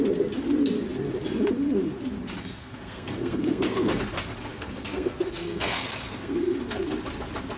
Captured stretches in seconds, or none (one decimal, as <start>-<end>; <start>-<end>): 0.0-2.6; 4.0-4.5; 6.4-7.6